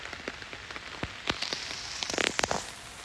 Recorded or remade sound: recorded